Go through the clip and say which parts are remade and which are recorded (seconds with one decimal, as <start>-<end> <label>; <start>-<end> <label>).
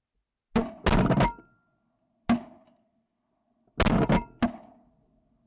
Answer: 0.0-5.5 recorded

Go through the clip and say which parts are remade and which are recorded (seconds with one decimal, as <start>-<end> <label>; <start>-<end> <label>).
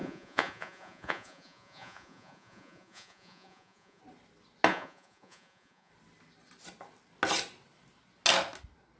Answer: 0.0-4.0 remade; 4.0-4.7 recorded; 4.7-5.9 remade; 5.9-9.0 recorded